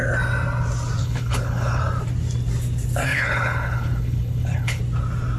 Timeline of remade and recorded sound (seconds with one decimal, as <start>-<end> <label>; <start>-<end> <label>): 0.0-1.0 recorded; 1.0-1.8 remade; 1.8-3.1 recorded; 3.1-4.8 remade; 4.8-5.4 recorded